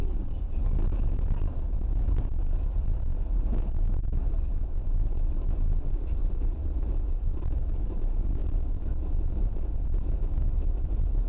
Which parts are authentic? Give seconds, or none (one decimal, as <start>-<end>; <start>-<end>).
0.6-6.2; 6.9-11.3

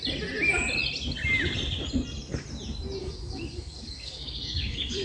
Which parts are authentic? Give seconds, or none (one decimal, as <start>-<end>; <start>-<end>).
0.0-3.0

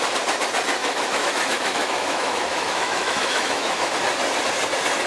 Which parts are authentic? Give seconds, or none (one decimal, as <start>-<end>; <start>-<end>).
0.0-0.8; 3.9-5.1

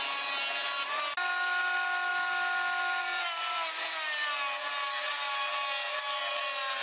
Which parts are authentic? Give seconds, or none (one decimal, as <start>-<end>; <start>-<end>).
0.0-6.8

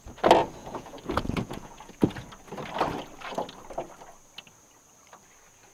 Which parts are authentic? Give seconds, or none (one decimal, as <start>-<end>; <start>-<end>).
0.0-0.6; 2.1-5.7

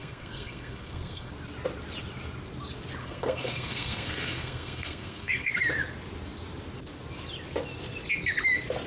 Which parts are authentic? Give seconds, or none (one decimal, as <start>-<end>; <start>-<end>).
1.3-3.0; 5.5-8.9

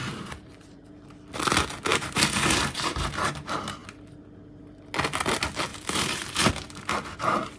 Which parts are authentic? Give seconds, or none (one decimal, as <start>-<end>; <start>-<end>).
0.9-1.9; 3.3-5.7; 6.5-7.6

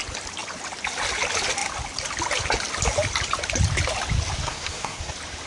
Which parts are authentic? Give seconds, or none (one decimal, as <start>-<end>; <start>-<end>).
0.0-4.4; 5.1-5.5